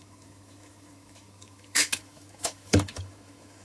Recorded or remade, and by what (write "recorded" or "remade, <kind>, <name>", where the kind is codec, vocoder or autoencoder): remade, autoencoder, DAC-VAE